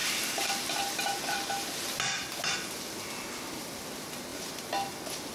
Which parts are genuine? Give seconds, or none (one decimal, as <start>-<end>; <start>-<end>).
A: 0.0-5.3